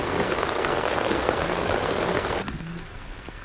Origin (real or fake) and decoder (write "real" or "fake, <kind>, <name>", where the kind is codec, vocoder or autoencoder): fake, codec, SNAC